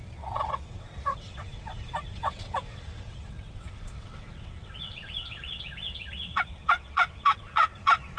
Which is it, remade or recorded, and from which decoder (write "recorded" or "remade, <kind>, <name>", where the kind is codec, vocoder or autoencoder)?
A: remade, vocoder, WaveNeXt